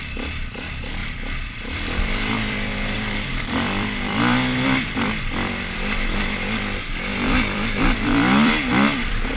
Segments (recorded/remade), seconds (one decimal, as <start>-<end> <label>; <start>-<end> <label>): 0.0-1.0 recorded; 1.0-4.2 remade; 4.2-7.1 recorded; 7.1-8.5 remade; 8.5-9.4 recorded